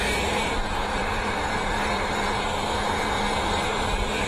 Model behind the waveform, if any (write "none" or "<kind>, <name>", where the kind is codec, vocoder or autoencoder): vocoder, BigVGAN v2